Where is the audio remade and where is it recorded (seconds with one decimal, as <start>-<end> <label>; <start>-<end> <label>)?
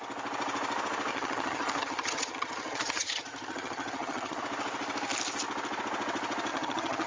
0.0-1.1 recorded; 1.1-4.4 remade; 4.4-6.5 recorded; 6.5-7.1 remade